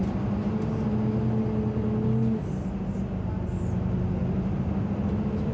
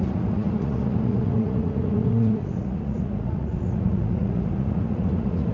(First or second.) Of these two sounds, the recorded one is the first